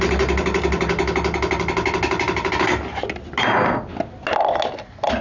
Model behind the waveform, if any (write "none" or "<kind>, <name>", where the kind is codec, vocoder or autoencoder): none